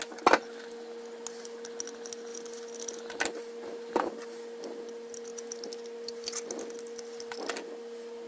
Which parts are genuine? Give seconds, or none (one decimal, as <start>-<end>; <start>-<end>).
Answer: 0.0-8.3

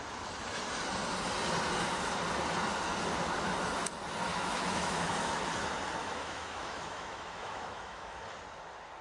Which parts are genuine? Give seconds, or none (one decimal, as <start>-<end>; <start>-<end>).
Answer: 0.0-4.3; 5.4-6.0; 8.2-9.0